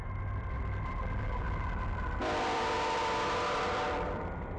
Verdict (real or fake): fake